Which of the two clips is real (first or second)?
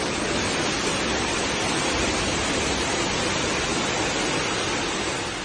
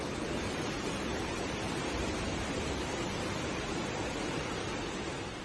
first